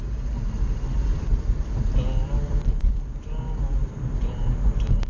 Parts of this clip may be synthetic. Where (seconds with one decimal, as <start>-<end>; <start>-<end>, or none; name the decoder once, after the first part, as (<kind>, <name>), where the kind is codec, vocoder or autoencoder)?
1.1-4.2 (vocoder, BigVGAN v2)